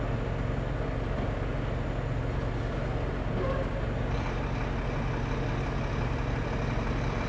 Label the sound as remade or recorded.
recorded